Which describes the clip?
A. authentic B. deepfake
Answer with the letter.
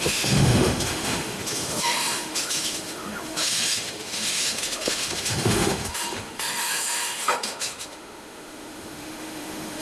B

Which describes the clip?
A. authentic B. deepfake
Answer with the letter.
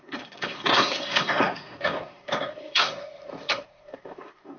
B